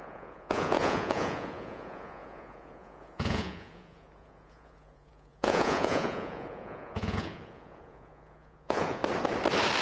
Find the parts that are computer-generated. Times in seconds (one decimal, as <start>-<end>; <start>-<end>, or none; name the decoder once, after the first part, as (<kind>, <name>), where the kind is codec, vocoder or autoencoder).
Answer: 0.0-9.0 (vocoder, Vocos)